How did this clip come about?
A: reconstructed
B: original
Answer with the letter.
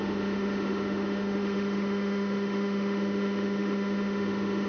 A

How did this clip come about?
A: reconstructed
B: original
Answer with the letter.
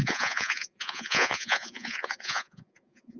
A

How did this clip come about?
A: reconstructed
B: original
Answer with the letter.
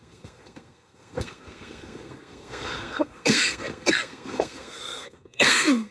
A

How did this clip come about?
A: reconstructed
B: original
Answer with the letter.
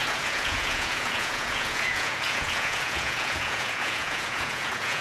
A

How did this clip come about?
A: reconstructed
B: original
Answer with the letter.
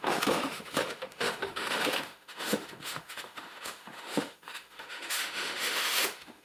A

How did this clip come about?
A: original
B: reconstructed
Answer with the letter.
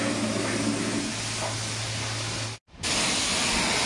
A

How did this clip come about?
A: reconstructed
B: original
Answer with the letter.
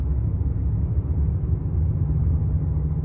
B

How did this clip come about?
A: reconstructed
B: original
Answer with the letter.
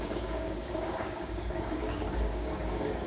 A